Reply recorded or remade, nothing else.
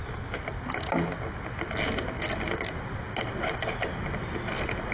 recorded